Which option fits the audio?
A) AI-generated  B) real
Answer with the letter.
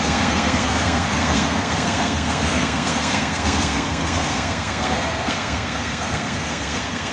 A